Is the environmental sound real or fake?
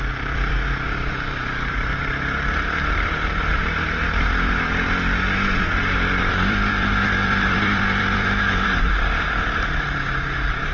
fake